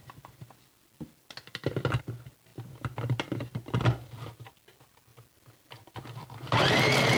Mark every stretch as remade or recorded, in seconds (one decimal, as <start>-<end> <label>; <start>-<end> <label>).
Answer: 0.0-7.2 recorded